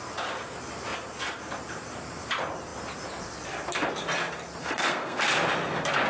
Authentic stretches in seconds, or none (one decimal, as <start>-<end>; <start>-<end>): 0.0-4.6; 5.2-6.1